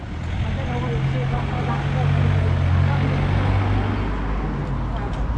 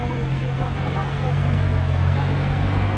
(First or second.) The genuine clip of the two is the first